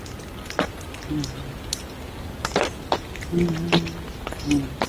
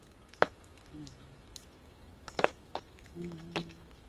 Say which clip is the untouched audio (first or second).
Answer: first